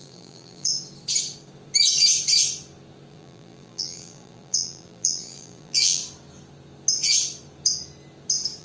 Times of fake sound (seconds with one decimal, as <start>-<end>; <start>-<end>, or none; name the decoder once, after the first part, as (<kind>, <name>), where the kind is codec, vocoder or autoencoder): 0.0-0.7 (vocoder, BigVGAN v2); 3.1-6.0